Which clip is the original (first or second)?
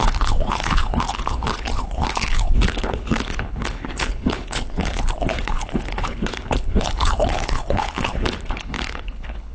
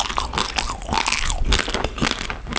second